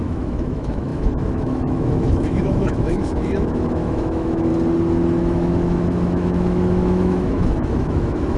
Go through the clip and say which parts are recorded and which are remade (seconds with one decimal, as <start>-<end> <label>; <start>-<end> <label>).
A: 0.0-4.5 remade; 4.5-5.2 recorded; 5.2-8.4 remade